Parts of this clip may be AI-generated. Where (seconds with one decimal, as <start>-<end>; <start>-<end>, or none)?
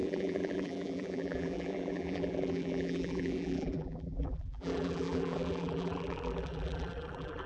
0.0-7.5